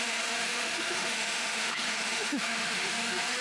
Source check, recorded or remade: remade